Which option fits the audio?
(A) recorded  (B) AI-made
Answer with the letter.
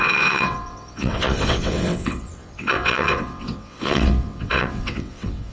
B